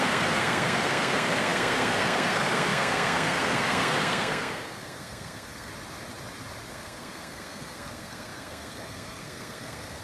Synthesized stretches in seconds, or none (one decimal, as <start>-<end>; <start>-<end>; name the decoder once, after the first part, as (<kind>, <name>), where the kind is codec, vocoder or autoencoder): 0.0-5.7 (codec, SNAC); 6.7-10.0